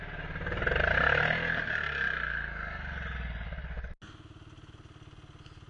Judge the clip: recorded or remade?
recorded